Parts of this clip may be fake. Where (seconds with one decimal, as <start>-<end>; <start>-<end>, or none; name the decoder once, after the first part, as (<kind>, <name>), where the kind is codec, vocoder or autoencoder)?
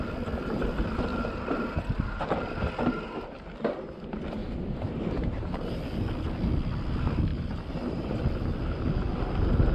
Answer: 1.1-1.8 (vocoder, BigVGAN v2); 4.4-5.7; 7.3-8.2